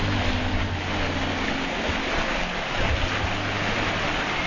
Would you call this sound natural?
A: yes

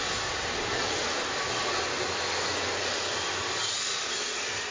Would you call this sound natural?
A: yes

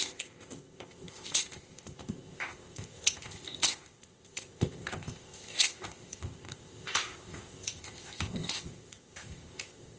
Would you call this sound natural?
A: no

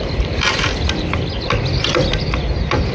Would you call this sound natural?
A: yes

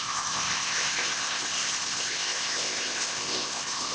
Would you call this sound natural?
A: no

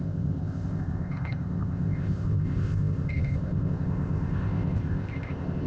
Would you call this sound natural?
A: no